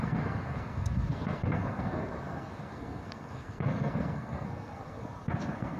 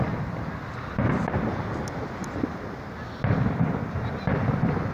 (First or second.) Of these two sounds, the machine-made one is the first